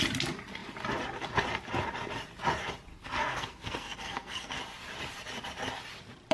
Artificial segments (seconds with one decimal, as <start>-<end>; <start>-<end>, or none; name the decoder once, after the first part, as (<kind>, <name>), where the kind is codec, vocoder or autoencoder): 2.9-4.6 (codec, SNAC)